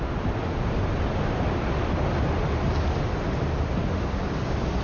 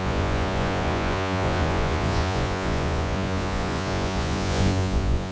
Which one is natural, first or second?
first